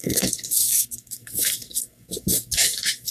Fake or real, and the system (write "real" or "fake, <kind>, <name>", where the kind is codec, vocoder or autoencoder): fake, codec, SNAC